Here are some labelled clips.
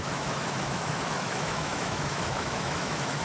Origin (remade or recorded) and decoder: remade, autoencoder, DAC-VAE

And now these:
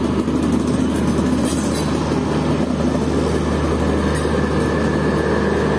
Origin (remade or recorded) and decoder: recorded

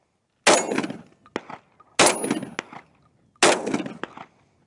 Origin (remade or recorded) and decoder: recorded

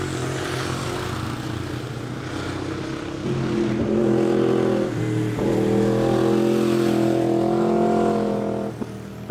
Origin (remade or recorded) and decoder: recorded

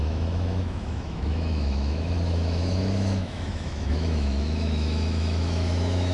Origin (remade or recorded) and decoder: remade, autoencoder, DAC-VAE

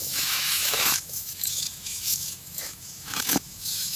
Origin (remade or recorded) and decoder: remade, autoencoder, DAC-VAE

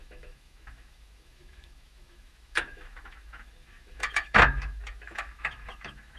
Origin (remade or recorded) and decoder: remade, autoencoder, DAC-VAE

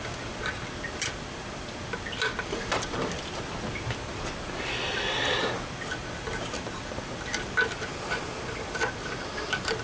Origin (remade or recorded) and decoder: recorded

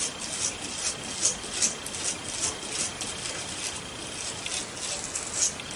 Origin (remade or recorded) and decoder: recorded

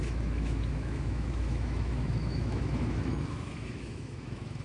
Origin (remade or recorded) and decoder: remade, autoencoder, DAC-VAE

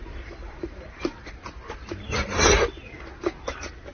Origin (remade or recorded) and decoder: recorded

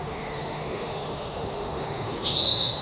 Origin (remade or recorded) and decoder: remade, autoencoder, DAC-VAE